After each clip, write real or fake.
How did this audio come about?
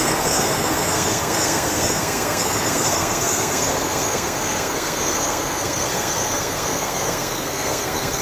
fake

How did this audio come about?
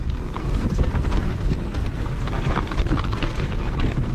fake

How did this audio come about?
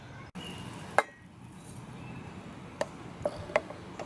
real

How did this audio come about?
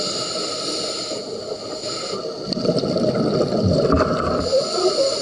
real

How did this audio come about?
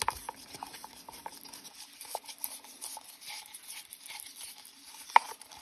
real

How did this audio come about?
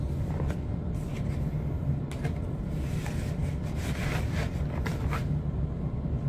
real